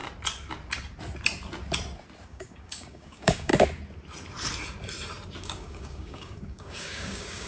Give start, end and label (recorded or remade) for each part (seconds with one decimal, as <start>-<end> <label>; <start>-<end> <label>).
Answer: 0.0-2.3 recorded; 2.3-3.5 remade; 3.5-5.4 recorded; 5.4-7.5 remade